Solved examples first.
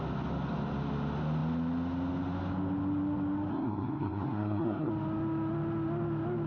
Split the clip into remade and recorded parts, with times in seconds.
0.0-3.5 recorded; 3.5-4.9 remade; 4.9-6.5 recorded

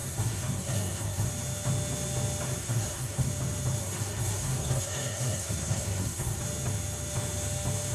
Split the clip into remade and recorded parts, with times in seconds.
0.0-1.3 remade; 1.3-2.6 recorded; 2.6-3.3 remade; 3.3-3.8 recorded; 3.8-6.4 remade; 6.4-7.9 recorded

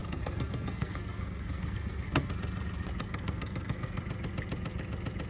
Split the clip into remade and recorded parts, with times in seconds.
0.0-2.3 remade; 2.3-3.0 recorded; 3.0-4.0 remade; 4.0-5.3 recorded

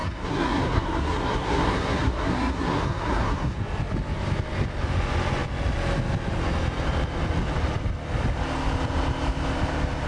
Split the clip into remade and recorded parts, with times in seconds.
0.0-3.6 remade; 3.6-10.1 recorded

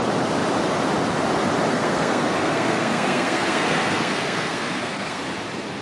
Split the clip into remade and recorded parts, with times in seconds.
0.0-1.7 recorded; 1.7-5.2 remade; 5.2-5.8 recorded

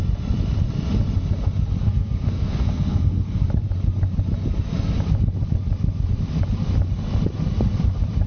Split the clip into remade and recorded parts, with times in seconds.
0.0-1.8 recorded; 1.8-3.4 remade; 3.4-8.3 recorded

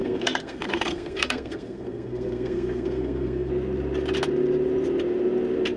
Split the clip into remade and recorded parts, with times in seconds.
0.0-3.5 remade; 3.5-5.8 recorded

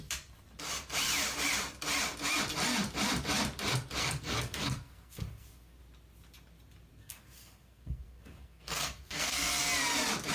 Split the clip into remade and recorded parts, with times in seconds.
0.0-4.0 recorded; 4.0-5.8 remade; 5.8-6.9 recorded; 6.9-9.6 remade; 9.6-10.3 recorded